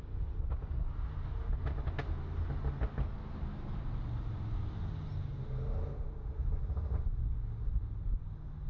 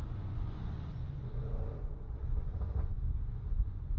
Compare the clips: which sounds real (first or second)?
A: first